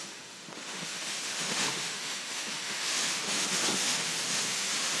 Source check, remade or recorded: remade